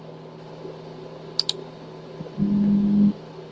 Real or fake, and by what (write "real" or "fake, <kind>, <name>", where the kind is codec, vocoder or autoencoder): real